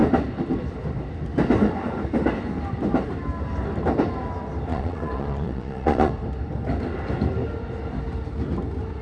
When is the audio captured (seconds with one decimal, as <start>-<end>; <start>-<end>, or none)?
0.0-4.7; 6.1-9.0

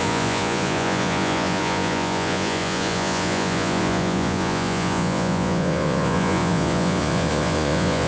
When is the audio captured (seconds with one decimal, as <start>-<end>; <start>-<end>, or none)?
none